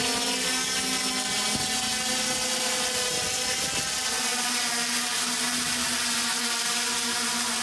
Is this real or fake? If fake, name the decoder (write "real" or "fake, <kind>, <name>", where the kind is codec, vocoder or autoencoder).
real